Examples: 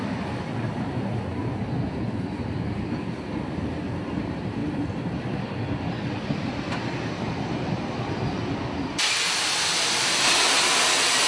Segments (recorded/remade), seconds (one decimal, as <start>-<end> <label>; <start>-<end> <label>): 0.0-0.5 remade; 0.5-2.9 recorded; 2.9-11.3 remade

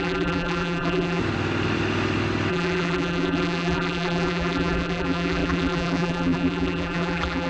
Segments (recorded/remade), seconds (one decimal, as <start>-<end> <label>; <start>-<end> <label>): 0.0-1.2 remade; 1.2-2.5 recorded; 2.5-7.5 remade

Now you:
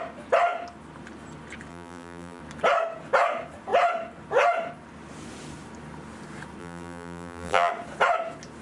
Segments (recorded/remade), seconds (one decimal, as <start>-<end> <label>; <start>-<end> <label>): 0.0-1.7 recorded; 1.7-2.4 remade; 2.4-6.6 recorded; 6.6-7.7 remade; 7.7-8.6 recorded

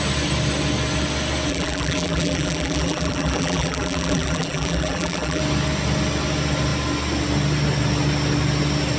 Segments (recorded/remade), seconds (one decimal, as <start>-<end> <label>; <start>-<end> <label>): 0.0-1.5 recorded; 1.5-5.4 remade; 5.4-9.0 recorded